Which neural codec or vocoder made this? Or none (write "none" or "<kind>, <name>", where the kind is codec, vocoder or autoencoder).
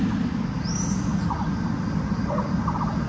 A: none